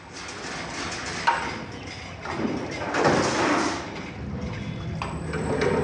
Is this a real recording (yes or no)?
yes